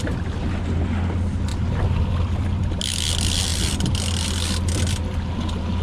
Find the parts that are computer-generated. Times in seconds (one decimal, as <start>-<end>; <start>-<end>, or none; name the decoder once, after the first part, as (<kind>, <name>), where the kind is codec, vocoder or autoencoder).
1.5-2.8 (vocoder, BigVGAN v2)